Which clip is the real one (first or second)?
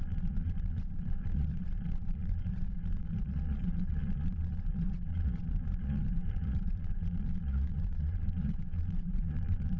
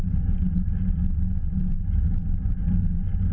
second